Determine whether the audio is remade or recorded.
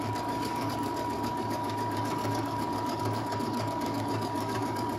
remade